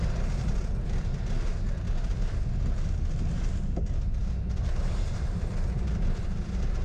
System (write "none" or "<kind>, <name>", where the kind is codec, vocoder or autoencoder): none